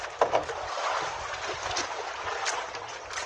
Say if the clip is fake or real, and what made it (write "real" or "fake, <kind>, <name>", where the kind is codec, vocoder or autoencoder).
real